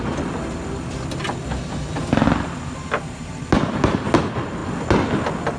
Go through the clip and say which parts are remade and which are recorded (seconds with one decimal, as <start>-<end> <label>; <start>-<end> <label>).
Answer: 0.0-5.6 recorded